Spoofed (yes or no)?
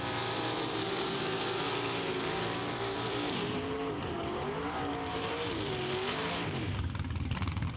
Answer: yes